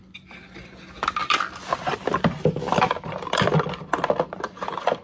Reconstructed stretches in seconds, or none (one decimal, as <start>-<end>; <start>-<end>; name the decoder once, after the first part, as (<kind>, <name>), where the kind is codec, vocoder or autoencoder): none